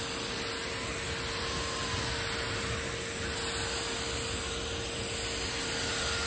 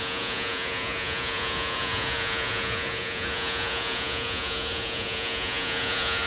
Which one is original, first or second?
first